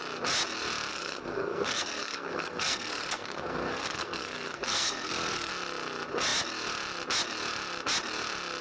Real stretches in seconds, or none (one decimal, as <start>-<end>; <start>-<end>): 0.0-0.9; 5.5-8.6